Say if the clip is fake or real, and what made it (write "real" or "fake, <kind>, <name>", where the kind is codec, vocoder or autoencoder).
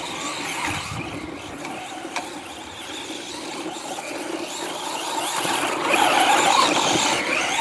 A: real